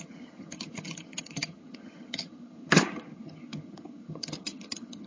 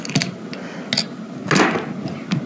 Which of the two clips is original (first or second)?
second